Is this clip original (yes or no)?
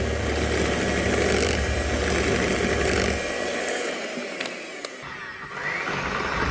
yes